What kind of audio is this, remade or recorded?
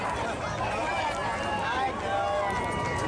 recorded